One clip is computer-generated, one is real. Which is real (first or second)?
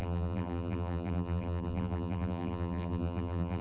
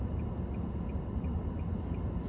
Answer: second